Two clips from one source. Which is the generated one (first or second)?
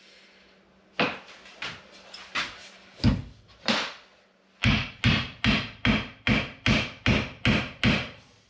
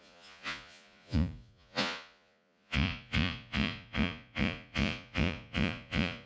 second